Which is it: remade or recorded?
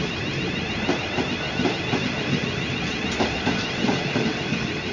remade